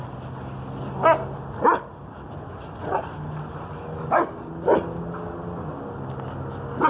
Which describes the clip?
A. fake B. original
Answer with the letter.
B